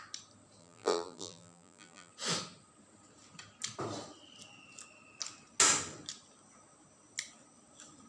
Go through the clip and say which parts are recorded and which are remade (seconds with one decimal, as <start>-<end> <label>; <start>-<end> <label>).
0.0-0.6 recorded; 0.6-2.1 remade; 2.1-8.1 recorded